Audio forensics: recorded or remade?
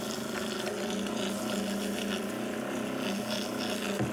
recorded